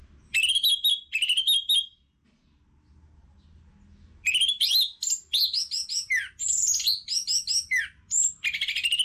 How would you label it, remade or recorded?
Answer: recorded